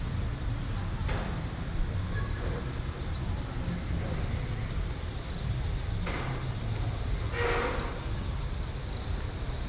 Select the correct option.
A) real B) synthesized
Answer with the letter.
A